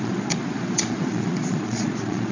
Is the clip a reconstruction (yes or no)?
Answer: yes